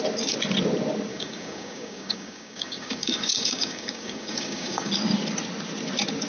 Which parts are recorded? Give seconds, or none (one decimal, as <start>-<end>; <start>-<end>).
0.0-1.1; 4.9-6.3